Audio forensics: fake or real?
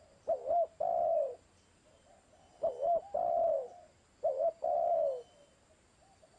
real